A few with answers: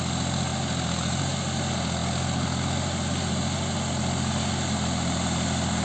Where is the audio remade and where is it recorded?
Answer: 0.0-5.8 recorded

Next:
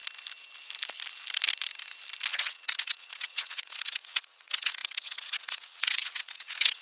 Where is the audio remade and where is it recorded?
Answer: 0.0-2.3 recorded; 2.3-6.8 remade

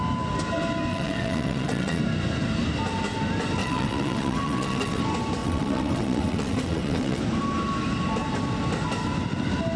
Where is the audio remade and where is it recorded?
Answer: 0.0-0.9 recorded; 0.9-2.0 remade; 2.0-3.6 recorded; 3.6-5.0 remade; 5.0-5.4 recorded; 5.4-7.2 remade; 7.2-9.8 recorded